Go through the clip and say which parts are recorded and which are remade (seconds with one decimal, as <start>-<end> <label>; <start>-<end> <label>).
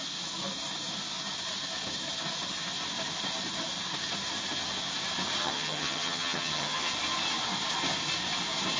0.0-5.4 recorded; 5.4-6.9 remade; 6.9-8.8 recorded